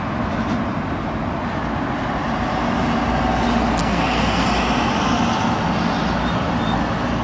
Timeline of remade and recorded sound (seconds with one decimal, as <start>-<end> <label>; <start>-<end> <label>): 0.0-3.8 recorded; 3.8-4.5 remade; 4.5-7.2 recorded